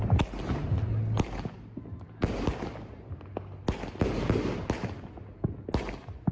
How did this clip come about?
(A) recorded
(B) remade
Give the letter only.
A